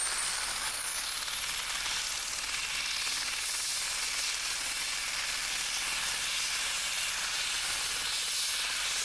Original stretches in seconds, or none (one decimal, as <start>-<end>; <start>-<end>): 0.0-0.5; 1.1-9.0